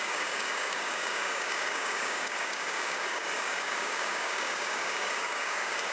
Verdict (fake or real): fake